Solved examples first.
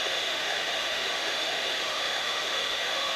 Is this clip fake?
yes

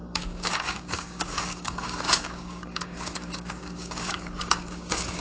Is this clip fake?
yes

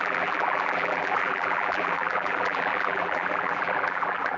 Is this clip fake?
yes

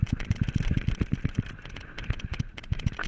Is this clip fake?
no